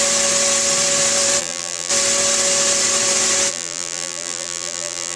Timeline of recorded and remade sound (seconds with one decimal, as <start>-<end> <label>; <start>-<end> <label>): 0.0-1.4 recorded; 1.4-1.9 remade; 1.9-3.5 recorded; 3.5-5.2 remade